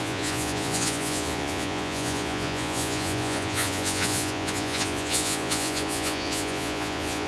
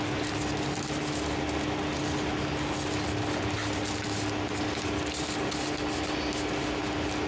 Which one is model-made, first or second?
first